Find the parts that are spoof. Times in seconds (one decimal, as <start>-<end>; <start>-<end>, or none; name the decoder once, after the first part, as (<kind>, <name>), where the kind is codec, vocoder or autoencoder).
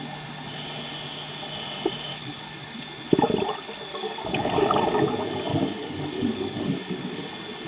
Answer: 2.1-2.8 (codec, DAC); 3.9-4.5; 5.5-7.3